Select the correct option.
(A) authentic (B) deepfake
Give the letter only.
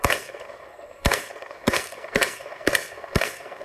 B